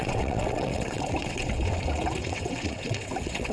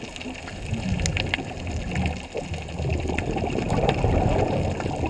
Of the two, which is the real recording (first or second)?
second